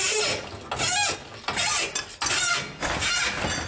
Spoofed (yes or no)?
no